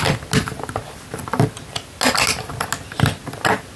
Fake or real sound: real